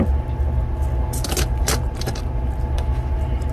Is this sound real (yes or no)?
yes